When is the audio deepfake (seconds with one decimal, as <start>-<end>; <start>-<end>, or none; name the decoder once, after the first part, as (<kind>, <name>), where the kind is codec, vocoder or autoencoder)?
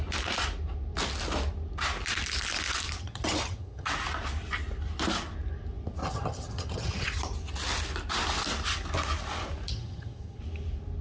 3.0-3.9 (vocoder, HiFi-GAN); 6.0-7.1; 9.7-10.4